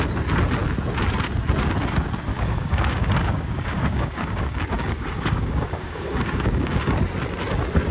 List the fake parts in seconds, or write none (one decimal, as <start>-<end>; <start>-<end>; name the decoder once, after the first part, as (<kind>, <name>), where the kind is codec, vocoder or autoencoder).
2.3-7.0 (codec, DAC)